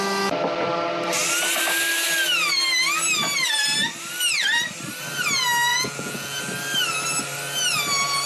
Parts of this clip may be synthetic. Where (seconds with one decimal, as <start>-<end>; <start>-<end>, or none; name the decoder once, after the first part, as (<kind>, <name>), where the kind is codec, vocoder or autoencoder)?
5.7-6.4 (vocoder, Vocos)